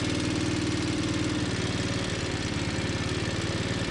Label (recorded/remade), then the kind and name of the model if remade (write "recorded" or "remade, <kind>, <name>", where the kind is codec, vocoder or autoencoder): recorded